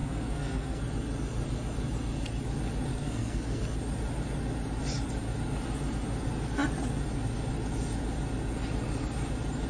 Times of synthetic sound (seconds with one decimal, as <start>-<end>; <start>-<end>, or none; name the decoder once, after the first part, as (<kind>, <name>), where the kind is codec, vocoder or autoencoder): 0.0-0.8 (codec, SNAC); 2.9-3.6